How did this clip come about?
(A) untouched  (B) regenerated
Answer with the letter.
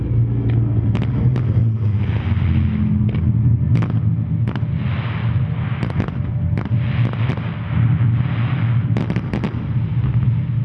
A